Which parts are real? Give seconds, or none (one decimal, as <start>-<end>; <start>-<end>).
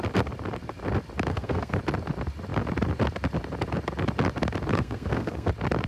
0.0-1.3; 1.8-4.7; 5.5-5.9